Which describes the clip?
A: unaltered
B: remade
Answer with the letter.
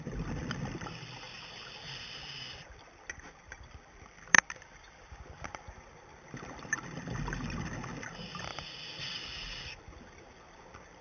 A